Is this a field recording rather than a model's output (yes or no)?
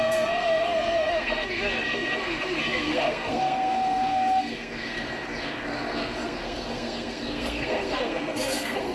no